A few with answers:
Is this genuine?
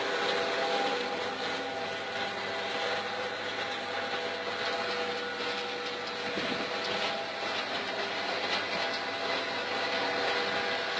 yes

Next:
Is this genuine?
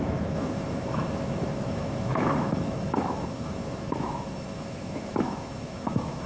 no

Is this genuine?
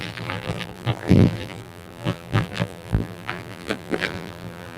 no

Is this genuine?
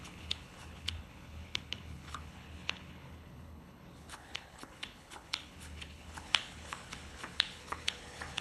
no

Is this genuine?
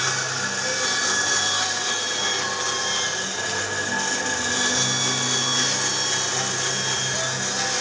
yes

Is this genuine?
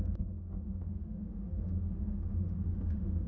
no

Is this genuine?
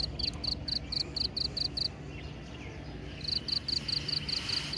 yes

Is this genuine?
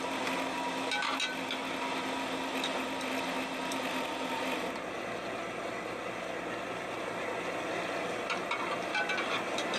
yes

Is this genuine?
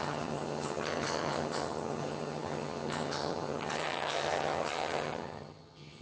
no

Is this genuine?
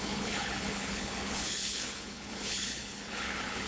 no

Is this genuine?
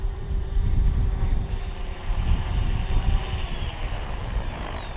no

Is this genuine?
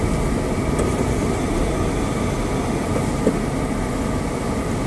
yes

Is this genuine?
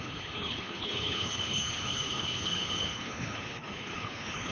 no